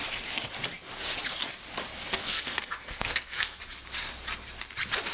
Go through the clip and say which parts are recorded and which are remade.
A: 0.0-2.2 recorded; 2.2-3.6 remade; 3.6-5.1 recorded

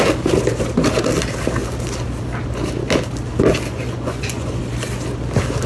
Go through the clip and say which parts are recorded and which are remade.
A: 0.0-3.7 recorded; 3.7-4.6 remade; 4.6-5.7 recorded

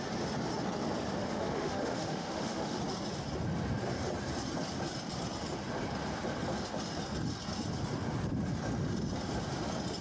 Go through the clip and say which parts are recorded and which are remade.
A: 0.0-1.2 recorded; 1.2-2.8 remade; 2.8-10.0 recorded